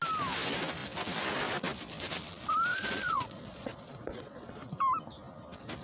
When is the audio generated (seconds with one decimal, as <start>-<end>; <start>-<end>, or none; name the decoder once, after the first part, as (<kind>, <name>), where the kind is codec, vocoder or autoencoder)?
2.7-4.6 (vocoder, Vocos)